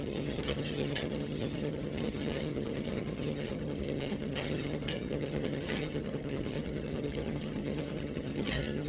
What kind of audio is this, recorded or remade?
remade